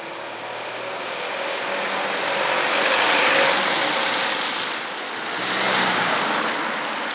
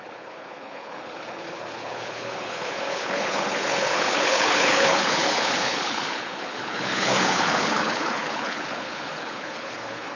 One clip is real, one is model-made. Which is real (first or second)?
first